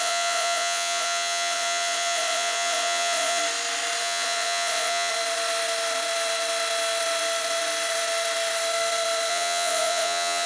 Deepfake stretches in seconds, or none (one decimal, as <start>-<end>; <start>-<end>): 0.0-3.4; 4.0-5.1; 9.3-10.5